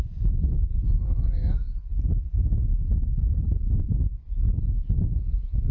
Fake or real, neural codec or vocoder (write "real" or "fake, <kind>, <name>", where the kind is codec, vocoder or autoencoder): real